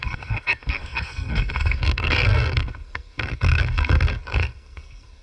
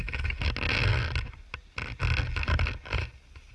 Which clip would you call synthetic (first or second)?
first